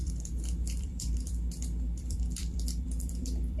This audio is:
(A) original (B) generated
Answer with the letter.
B